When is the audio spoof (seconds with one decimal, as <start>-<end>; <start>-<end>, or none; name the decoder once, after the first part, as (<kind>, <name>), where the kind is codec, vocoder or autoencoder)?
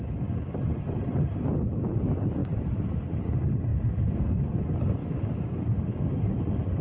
3.7-4.2 (codec, DAC); 5.0-6.1